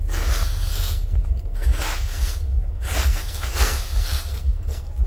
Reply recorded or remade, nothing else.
remade